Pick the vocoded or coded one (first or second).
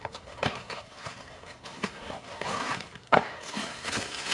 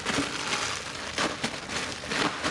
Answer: first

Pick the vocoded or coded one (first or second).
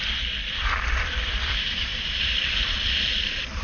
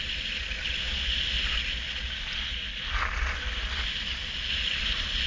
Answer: first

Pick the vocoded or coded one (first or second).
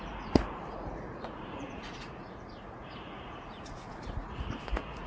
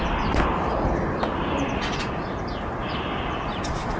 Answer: first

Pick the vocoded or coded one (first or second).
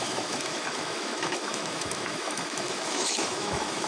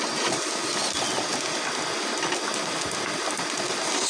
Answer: first